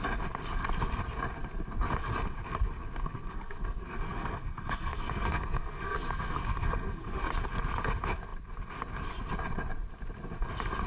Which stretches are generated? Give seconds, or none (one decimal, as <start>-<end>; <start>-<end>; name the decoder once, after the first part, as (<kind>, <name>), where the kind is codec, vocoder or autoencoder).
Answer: 3.0-7.3 (codec, SNAC)

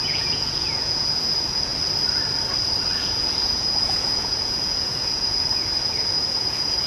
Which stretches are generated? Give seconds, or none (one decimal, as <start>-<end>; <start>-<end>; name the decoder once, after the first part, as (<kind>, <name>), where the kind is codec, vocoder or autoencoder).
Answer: 0.0-1.7 (vocoder, Vocos); 3.0-6.9

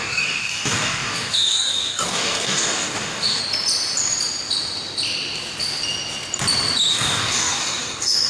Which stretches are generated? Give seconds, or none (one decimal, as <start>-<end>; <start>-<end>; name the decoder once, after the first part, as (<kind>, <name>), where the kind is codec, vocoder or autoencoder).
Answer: 0.0-3.4 (codec, DAC); 6.9-8.3

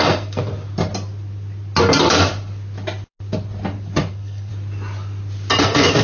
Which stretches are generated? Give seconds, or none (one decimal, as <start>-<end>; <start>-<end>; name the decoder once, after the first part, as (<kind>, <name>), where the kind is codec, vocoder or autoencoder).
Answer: 0.0-0.5 (codec, SNAC); 4.1-4.5; 5.6-6.0